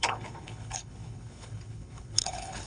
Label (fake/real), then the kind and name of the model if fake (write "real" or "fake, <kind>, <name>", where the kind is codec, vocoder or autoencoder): fake, codec, HILCodec